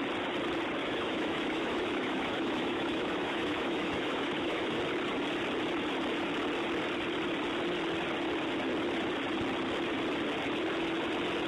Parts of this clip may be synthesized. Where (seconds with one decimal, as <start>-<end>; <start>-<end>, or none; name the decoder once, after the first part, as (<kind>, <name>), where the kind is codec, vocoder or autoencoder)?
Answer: 0.8-4.8 (autoencoder, DAC-VAE)